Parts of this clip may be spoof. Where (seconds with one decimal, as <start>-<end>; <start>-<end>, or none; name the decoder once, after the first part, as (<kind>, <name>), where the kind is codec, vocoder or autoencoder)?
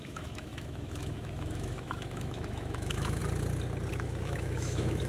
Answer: 0.0-3.2 (autoencoder, DAC-VAE); 3.9-5.1